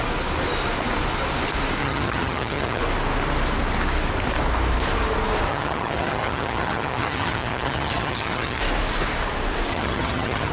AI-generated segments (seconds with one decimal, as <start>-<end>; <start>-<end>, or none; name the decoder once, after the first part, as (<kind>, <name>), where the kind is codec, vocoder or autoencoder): 1.8-2.8 (vocoder, HiFi-GAN); 5.5-8.6; 9.7-10.5